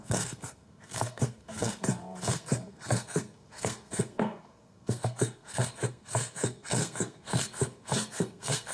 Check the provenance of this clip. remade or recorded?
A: remade